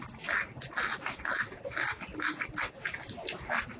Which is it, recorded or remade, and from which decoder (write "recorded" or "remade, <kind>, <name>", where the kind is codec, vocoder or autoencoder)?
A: recorded